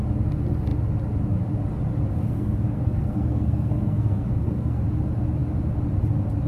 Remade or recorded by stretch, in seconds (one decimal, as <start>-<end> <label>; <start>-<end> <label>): 0.0-2.2 recorded; 2.2-4.8 remade; 4.8-6.5 recorded